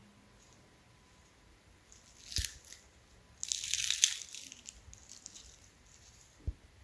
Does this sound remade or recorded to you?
recorded